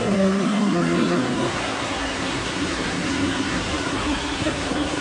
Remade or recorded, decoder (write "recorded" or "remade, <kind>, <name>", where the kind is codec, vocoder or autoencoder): remade, codec, SNAC